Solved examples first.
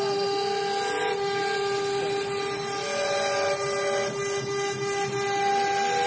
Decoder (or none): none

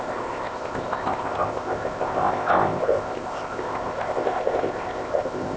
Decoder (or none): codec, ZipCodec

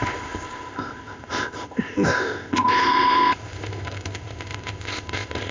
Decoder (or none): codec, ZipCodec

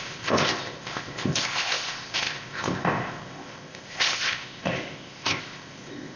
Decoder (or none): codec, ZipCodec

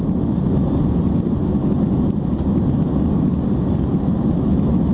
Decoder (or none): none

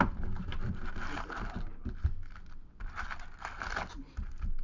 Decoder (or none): none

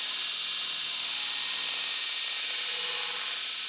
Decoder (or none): none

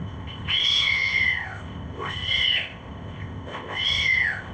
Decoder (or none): codec, ZipCodec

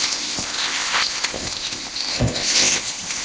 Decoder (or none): codec, ZipCodec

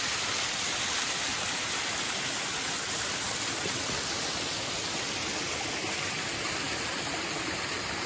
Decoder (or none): none